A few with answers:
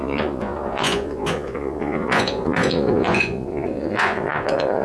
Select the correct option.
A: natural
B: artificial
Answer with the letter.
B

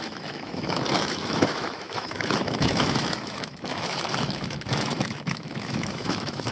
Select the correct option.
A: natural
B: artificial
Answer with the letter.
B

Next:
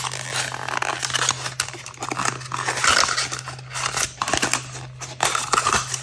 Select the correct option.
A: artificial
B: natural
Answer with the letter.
B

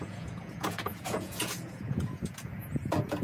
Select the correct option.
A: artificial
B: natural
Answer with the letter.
A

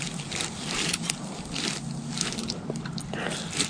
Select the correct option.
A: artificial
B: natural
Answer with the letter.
B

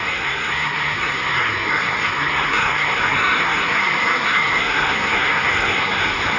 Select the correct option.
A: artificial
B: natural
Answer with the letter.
A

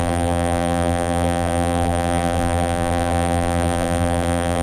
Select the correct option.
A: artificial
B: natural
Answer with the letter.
A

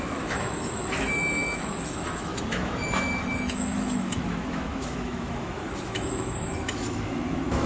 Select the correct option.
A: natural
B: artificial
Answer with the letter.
B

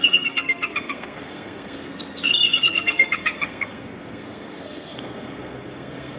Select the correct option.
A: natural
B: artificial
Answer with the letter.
B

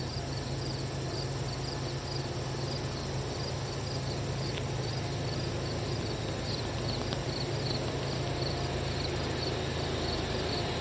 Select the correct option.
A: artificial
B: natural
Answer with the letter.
B